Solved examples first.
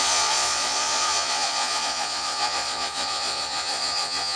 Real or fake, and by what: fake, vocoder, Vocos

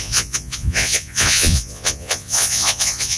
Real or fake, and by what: fake, vocoder, Vocos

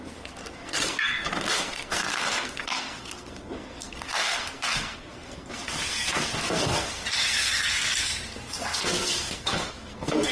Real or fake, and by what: fake, codec, SNAC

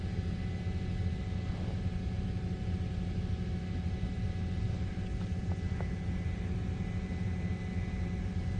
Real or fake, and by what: real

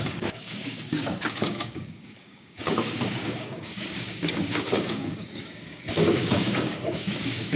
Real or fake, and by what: fake, codec, DAC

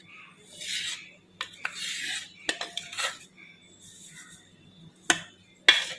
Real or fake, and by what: real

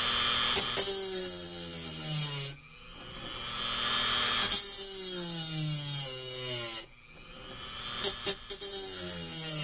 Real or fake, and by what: real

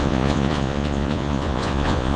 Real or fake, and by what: fake, vocoder, Vocos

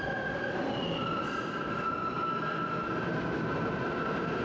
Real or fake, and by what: real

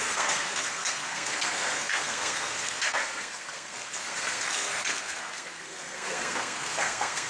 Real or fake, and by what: fake, codec, SNAC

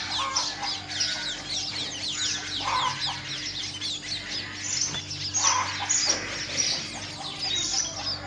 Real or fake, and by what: real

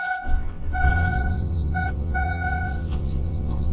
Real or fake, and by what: fake, vocoder, WaveNeXt